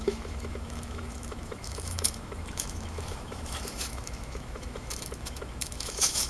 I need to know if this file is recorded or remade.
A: remade